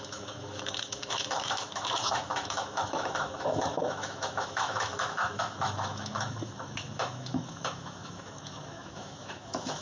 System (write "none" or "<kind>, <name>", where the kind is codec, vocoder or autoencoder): autoencoder, DAC-VAE